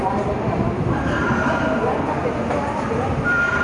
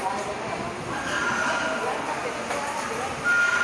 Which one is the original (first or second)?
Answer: second